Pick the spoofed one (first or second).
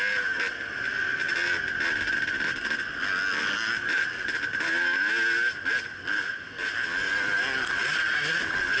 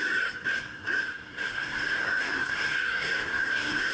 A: second